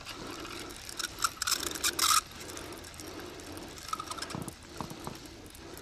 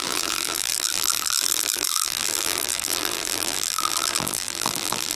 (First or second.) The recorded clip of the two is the first